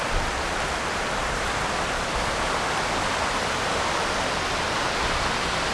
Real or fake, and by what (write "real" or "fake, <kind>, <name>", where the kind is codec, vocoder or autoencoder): real